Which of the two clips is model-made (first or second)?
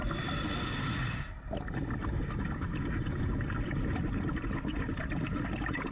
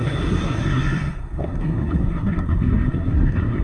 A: second